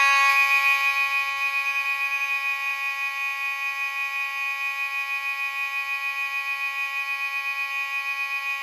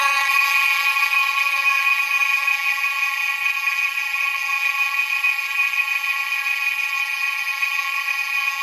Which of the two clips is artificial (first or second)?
second